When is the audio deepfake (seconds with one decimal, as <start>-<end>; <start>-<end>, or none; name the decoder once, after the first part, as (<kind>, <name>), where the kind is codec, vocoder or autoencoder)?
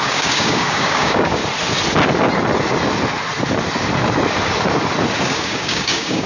0.0-1.4 (codec, DAC); 5.2-6.3